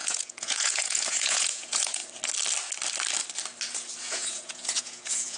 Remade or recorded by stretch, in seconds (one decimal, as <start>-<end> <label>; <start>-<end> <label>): 0.0-2.0 remade; 2.0-4.0 recorded; 4.0-5.4 remade